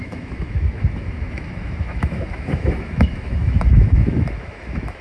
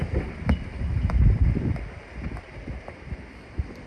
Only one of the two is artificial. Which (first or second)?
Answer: first